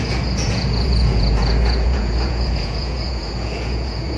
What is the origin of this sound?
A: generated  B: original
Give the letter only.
A